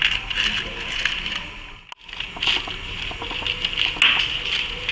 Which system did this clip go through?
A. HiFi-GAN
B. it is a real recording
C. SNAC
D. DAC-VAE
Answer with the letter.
B